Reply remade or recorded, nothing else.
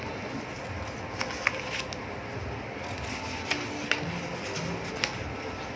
recorded